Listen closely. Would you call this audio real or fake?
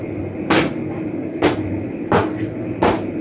real